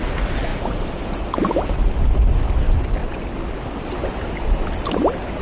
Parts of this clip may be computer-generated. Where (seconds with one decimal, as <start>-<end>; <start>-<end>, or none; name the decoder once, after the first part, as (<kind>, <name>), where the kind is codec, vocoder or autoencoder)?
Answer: 0.5-2.6 (vocoder, BigVGAN v2); 3.0-4.9